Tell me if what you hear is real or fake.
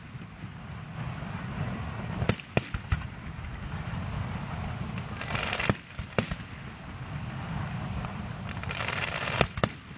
fake